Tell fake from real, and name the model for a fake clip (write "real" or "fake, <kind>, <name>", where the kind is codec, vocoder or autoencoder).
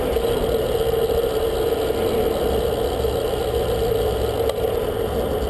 real